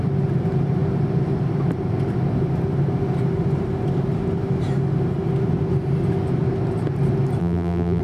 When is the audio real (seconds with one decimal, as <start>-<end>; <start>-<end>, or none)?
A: 0.0-7.4

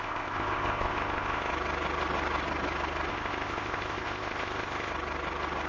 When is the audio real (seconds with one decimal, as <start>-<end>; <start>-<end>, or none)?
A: 1.5-3.1; 4.9-5.7

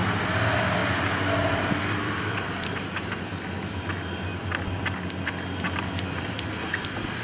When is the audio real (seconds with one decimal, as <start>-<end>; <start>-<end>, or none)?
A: 0.0-7.2

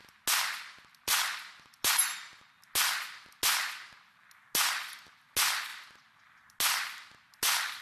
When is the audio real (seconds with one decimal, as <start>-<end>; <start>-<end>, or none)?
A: 0.0-7.8

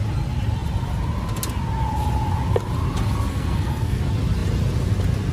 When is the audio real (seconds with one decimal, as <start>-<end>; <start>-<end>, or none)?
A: 0.0-3.3; 4.0-5.3

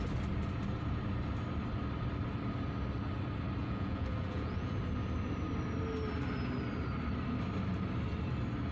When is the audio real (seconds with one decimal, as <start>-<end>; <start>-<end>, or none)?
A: 0.0-3.6; 4.8-8.7

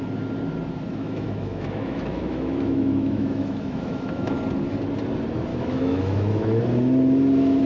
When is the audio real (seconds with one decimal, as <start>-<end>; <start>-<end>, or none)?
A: 0.0-0.9; 4.4-5.5; 6.6-7.7